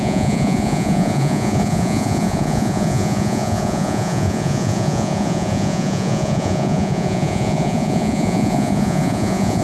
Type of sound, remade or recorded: remade